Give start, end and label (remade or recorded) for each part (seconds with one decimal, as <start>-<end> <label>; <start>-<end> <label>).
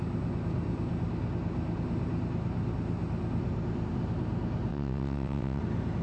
0.0-4.7 recorded; 4.7-5.6 remade; 5.6-6.0 recorded